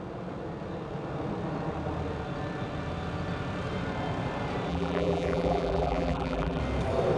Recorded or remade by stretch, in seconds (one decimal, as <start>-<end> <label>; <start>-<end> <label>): 0.0-4.7 recorded; 4.7-6.6 remade; 6.6-7.2 recorded